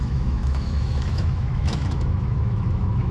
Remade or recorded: remade